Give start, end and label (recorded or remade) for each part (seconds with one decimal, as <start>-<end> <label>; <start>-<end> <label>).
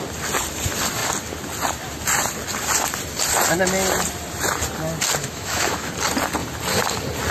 0.0-5.2 recorded; 5.2-5.9 remade; 5.9-7.3 recorded